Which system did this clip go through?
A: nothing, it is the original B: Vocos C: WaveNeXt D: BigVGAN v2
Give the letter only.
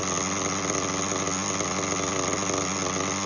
A